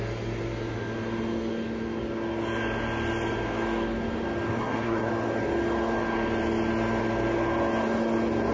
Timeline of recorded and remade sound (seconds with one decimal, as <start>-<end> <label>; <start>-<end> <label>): 0.0-4.6 recorded; 4.6-5.1 remade; 5.1-8.5 recorded